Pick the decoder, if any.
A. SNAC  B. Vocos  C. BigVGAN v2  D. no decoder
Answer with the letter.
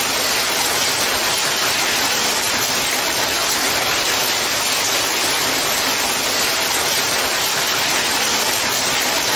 D